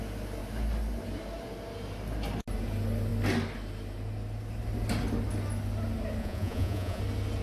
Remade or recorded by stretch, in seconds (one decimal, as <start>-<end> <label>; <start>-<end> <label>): 0.0-6.2 recorded; 6.2-7.0 remade; 7.0-7.4 recorded